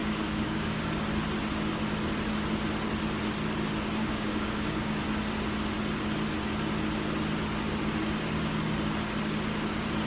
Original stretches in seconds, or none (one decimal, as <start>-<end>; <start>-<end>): 0.8-4.0; 5.0-10.1